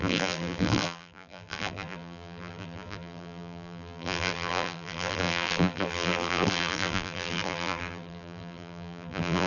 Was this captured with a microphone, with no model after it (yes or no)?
no